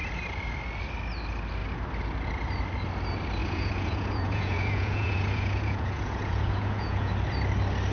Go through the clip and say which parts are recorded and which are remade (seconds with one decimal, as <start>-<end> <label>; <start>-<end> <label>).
0.0-3.4 recorded; 3.4-7.1 remade; 7.1-7.9 recorded